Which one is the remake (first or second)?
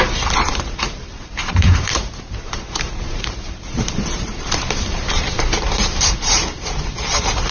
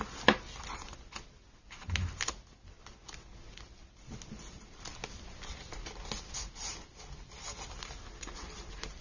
first